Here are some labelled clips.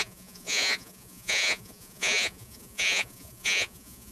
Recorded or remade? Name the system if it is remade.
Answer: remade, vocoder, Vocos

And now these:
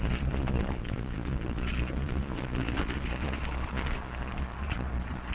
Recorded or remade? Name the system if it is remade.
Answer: remade, vocoder, Vocos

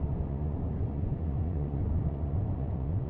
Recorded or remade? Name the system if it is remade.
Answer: remade, vocoder, Vocos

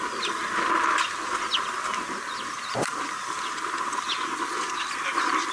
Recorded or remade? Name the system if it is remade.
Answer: recorded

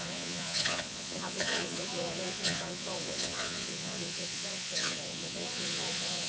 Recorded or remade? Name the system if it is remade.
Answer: remade, vocoder, Vocos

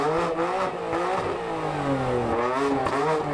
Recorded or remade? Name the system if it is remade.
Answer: recorded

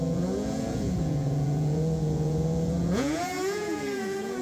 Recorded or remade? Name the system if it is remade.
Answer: remade, vocoder, Vocos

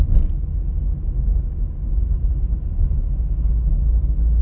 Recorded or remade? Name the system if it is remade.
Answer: recorded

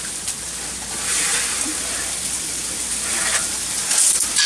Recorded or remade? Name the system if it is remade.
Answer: recorded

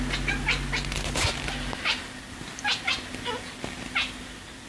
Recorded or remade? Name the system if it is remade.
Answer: recorded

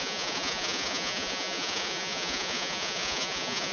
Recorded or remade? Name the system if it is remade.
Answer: remade, vocoder, Vocos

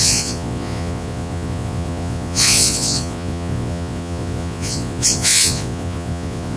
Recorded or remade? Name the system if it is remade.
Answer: remade, vocoder, Vocos